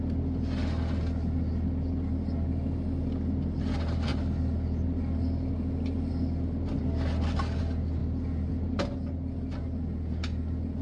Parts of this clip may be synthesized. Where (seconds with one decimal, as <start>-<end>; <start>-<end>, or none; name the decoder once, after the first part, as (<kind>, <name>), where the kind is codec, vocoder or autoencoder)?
none